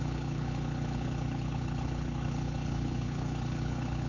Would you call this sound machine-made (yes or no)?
yes